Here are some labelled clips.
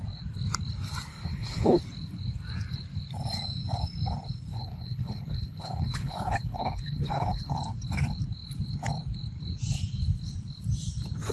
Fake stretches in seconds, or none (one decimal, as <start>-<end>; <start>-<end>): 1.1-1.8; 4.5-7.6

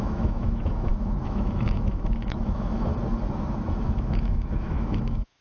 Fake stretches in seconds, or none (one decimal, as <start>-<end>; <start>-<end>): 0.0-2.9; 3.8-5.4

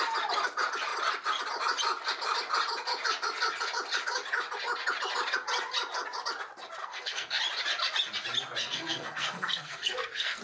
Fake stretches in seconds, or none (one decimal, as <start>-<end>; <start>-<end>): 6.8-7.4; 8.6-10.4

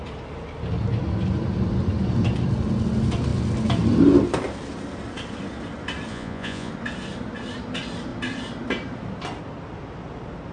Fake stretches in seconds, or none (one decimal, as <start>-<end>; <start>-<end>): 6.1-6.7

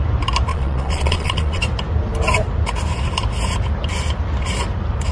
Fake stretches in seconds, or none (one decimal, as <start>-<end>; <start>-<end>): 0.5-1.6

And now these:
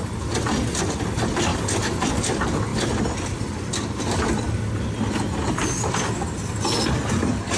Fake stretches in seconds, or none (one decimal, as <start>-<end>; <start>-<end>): none

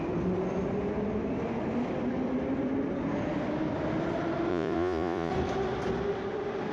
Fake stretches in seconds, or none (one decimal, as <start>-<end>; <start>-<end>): 4.5-5.3

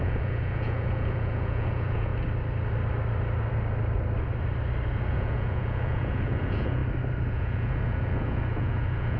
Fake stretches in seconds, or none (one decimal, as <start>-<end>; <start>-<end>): 0.0-2.1; 5.1-6.8; 7.3-9.2